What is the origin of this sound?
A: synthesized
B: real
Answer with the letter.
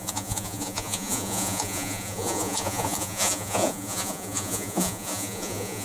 A